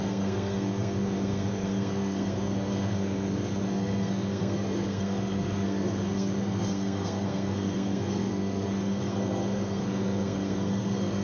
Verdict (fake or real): fake